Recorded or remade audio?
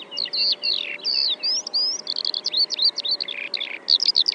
recorded